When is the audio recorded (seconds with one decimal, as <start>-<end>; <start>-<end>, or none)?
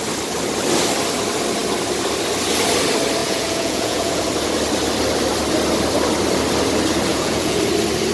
0.0-3.2; 4.2-7.1; 7.6-8.1